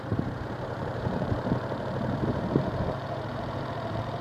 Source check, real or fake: fake